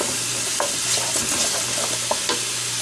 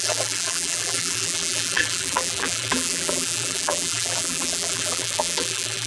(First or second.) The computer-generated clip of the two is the second